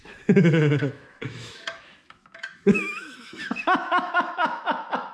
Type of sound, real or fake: fake